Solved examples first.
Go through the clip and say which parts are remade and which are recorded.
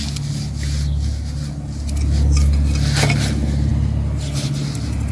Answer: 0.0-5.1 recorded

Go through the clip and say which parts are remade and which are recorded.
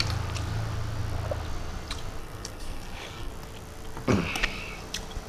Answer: 0.0-2.2 recorded; 2.2-3.3 remade; 3.3-5.3 recorded